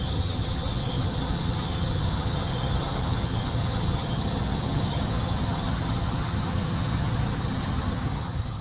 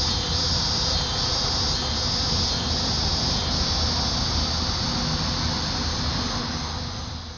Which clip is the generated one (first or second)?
first